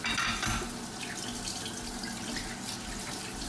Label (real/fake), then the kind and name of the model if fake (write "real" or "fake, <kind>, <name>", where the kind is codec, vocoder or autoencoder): real